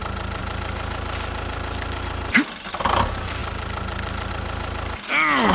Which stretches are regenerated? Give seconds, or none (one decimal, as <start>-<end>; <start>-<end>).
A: none